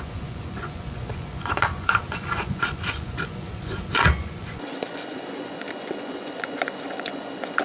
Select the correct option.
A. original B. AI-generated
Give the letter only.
B